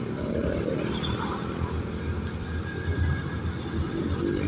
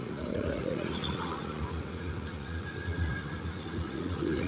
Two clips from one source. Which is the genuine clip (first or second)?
first